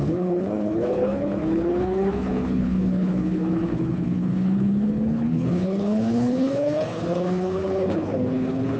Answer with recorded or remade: remade